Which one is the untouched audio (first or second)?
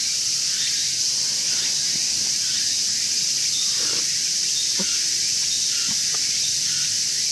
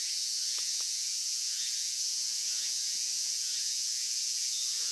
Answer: first